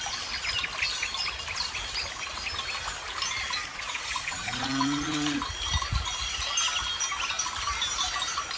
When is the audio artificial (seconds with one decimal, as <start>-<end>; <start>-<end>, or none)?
3.7-5.4